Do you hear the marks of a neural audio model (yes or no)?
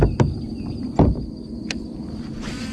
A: no